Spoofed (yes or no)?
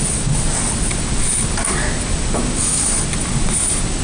no